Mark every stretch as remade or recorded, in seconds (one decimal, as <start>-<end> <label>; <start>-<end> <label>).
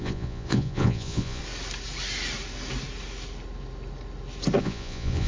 0.0-1.4 remade; 1.4-4.6 recorded; 4.6-5.3 remade